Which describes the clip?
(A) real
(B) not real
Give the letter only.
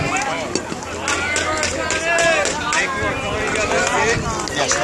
A